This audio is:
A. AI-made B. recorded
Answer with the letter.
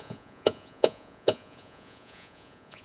A